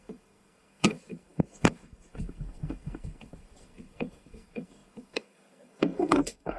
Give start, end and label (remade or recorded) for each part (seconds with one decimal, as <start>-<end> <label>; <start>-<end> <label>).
0.0-6.6 remade